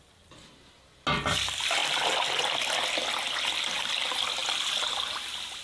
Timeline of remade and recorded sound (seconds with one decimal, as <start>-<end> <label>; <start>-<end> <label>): 0.0-5.6 recorded